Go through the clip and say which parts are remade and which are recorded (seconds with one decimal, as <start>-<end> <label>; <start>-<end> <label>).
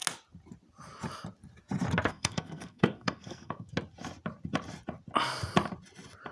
0.0-2.1 recorded; 2.1-3.7 remade; 3.7-6.3 recorded